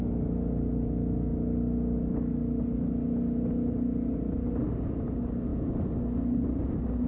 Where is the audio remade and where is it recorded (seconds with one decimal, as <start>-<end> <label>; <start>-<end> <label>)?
0.0-7.1 recorded